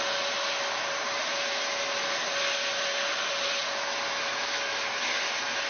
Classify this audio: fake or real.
real